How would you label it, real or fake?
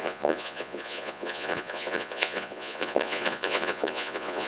fake